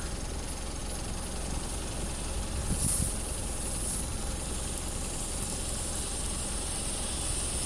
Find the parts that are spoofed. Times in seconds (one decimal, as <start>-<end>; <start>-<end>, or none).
4.1-6.8